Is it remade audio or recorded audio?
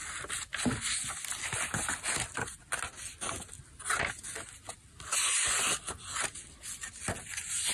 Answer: recorded